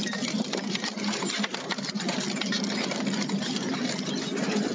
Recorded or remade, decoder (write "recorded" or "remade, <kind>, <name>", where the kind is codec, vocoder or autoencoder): recorded